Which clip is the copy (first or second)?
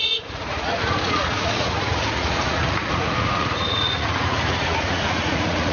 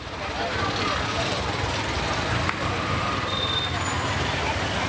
first